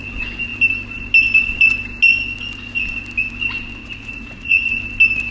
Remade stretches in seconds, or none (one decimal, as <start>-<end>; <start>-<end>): 3.8-4.7